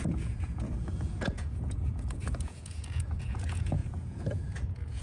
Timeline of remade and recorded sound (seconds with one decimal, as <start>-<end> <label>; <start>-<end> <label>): 0.0-5.0 remade